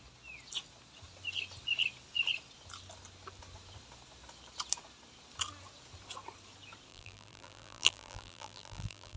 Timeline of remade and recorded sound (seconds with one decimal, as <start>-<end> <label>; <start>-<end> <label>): 0.0-6.9 recorded; 6.9-9.2 remade